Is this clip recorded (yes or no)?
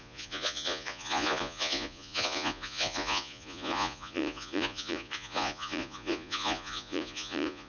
no